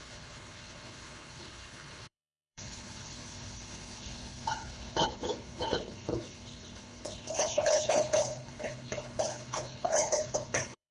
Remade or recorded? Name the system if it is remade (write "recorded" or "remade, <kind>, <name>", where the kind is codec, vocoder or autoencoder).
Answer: remade, codec, HILCodec